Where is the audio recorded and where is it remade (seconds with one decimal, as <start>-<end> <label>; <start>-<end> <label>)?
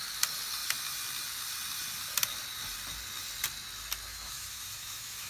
0.0-4.1 recorded; 4.1-5.3 remade